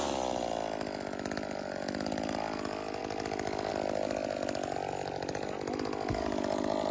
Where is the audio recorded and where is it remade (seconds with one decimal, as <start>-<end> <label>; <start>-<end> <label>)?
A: 0.0-6.9 recorded